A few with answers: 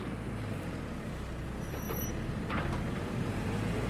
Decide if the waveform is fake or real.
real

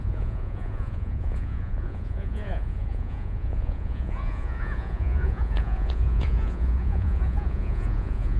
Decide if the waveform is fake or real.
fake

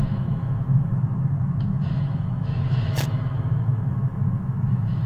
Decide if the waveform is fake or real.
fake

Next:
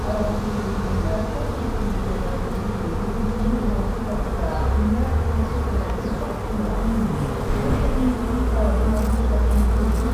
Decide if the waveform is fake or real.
real